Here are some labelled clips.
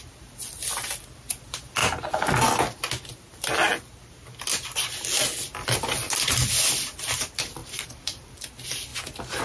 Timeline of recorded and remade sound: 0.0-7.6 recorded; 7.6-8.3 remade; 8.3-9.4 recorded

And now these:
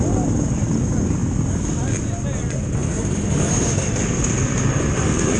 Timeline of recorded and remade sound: 0.0-1.2 recorded; 1.2-1.7 remade; 1.7-2.8 recorded; 2.8-4.8 remade; 4.8-5.4 recorded

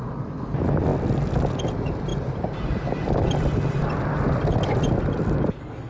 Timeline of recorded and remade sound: 0.0-2.1 recorded; 2.1-5.4 remade; 5.4-5.9 recorded

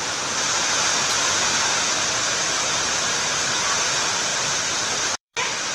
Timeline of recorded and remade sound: 0.0-5.7 remade

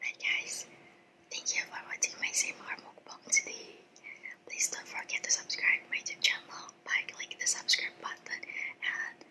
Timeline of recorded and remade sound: 0.0-0.9 recorded; 0.9-5.3 remade; 5.3-9.3 recorded

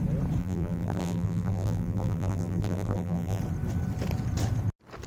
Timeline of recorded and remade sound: 0.0-0.4 recorded; 0.4-3.4 remade; 3.4-5.1 recorded

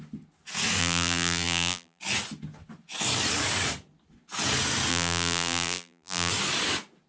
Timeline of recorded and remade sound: 0.0-0.8 recorded; 0.8-2.0 remade; 2.0-4.9 recorded; 4.9-6.3 remade; 6.3-7.1 recorded

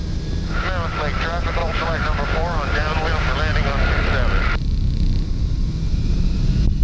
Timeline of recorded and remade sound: 0.0-1.6 recorded; 1.6-3.1 remade; 3.1-6.8 recorded